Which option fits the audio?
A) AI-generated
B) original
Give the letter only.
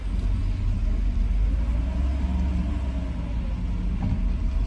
B